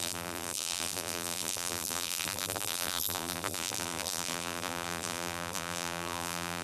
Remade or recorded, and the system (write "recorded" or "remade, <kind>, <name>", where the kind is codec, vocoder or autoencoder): remade, vocoder, BigVGAN v2